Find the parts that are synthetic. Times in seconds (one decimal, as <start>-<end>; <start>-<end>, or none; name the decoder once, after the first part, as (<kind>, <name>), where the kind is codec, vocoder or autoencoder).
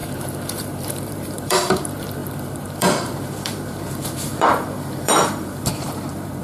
0.0-6.4 (vocoder, BigVGAN v2)